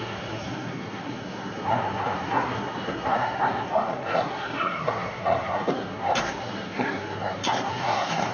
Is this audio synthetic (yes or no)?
yes